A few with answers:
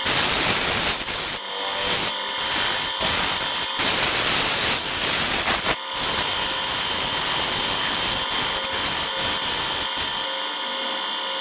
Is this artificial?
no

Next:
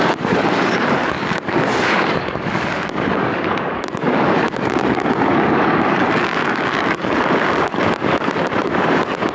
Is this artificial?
yes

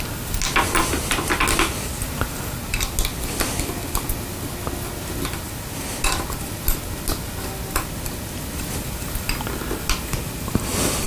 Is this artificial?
no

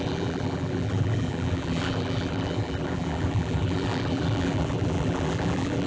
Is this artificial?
yes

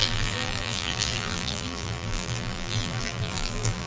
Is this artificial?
yes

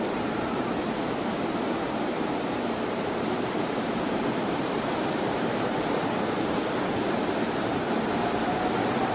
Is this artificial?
yes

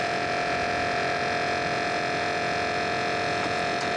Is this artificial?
yes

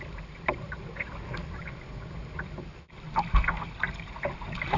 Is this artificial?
no